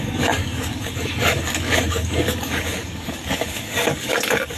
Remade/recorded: remade